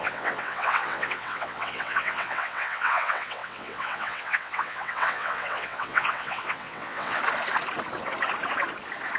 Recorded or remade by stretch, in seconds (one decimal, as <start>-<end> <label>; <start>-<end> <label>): 0.0-7.2 remade; 7.2-9.2 recorded